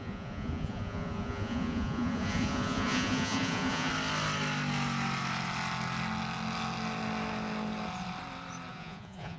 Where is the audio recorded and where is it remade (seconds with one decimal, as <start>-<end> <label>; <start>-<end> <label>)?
0.0-3.9 remade; 3.9-8.7 recorded; 8.7-9.4 remade